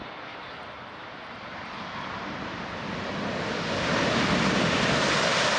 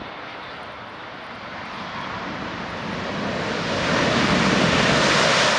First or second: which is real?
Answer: second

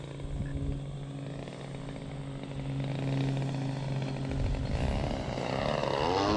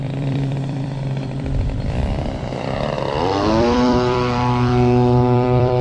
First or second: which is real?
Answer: first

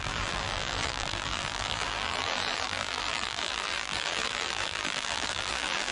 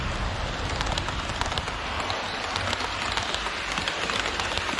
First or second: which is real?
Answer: second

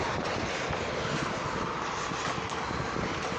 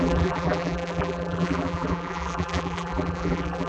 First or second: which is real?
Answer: first